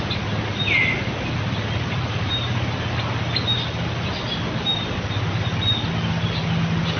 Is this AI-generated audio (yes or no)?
no